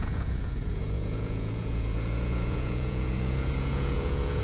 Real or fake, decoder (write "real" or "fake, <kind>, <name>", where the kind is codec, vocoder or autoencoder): fake, vocoder, Vocos